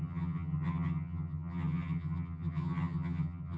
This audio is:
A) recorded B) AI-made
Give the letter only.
B